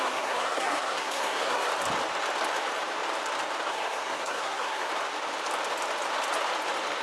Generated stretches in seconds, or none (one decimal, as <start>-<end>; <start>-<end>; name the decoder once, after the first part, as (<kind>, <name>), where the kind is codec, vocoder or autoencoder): 0.0-1.7 (codec, SNAC); 3.7-4.9